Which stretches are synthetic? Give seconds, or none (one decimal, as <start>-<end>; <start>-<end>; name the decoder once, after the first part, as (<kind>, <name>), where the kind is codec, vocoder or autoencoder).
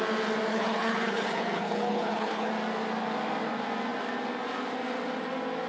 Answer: 0.5-2.5 (codec, HILCodec)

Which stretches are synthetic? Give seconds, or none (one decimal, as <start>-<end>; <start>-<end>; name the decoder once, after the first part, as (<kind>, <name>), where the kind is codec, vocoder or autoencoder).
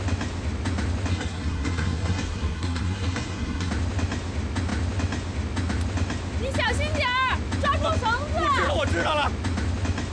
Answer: 1.1-3.7 (codec, SNAC)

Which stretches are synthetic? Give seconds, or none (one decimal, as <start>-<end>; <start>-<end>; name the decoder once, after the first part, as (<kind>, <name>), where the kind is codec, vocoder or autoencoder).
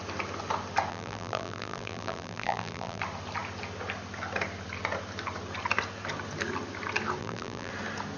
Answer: 0.9-3.0 (vocoder, BigVGAN v2); 7.2-7.7